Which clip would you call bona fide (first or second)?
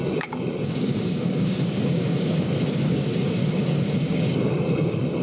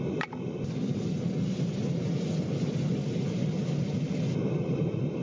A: second